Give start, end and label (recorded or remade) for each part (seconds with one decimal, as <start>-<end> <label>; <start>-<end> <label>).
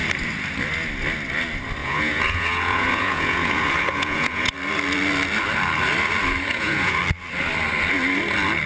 0.0-1.8 recorded; 1.8-4.5 remade; 4.5-6.5 recorded; 6.5-7.0 remade; 7.0-8.7 recorded